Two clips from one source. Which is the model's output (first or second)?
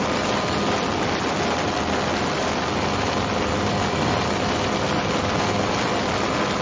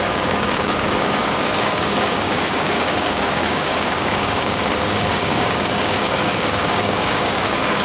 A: second